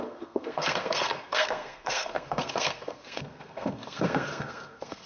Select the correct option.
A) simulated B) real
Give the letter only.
A